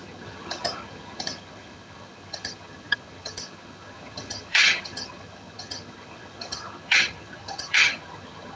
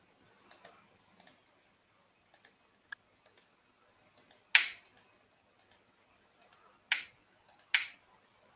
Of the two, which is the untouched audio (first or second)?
second